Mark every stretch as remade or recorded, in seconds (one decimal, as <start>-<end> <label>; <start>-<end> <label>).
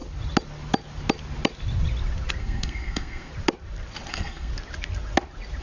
0.0-2.4 recorded; 2.4-3.3 remade; 3.3-4.1 recorded; 4.1-4.5 remade; 4.5-5.6 recorded